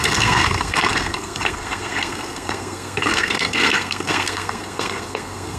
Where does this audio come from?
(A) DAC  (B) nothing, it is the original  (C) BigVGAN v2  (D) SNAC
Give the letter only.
D